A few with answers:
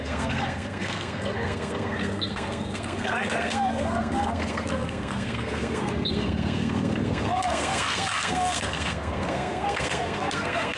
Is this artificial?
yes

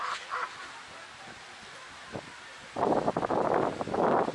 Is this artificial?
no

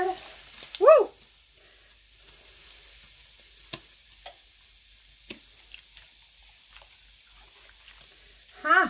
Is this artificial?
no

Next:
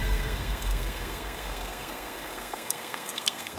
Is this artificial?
yes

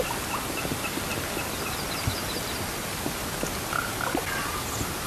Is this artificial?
no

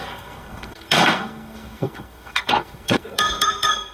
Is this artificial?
yes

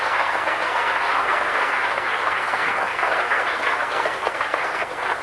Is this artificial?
yes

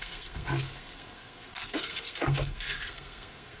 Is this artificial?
yes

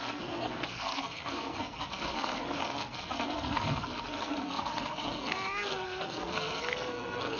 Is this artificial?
yes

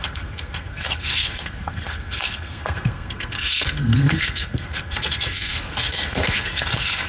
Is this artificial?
yes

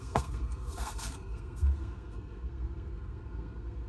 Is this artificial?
yes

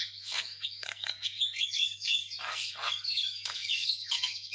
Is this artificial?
yes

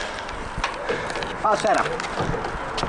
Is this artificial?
no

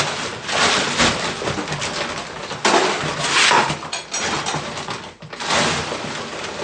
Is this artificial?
no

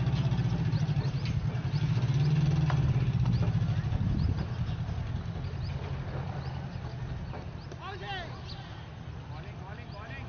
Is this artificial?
no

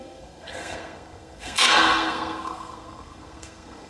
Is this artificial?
yes